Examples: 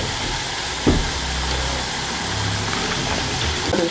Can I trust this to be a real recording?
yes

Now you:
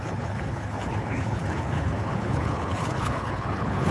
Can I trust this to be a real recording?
no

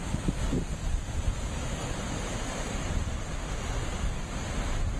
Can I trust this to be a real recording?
yes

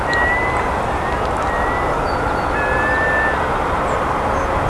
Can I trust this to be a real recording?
yes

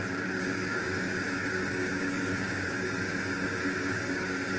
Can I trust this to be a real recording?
no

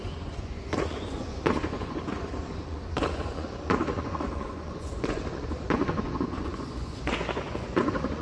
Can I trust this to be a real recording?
no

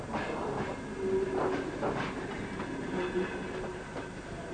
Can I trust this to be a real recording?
yes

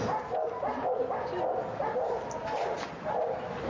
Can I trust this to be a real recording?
yes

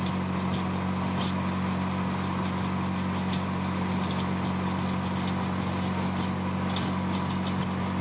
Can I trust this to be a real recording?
yes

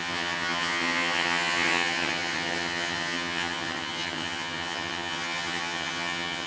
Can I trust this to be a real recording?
no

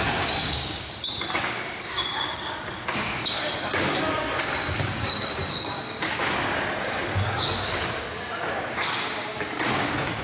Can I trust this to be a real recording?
no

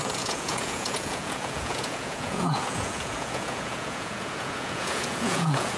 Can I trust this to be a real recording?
no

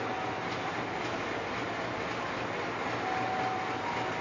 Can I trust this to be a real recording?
yes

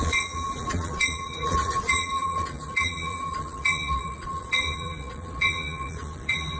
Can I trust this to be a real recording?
no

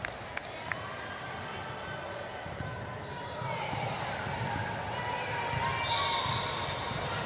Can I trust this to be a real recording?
yes